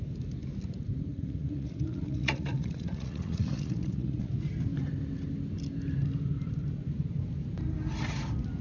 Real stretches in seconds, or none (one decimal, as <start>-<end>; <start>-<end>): 0.0-1.1; 4.3-8.6